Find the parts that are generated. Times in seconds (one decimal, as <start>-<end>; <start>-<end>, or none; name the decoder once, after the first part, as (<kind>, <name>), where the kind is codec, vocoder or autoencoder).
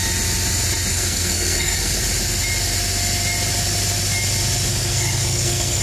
0.9-2.0 (codec, SNAC); 4.7-5.8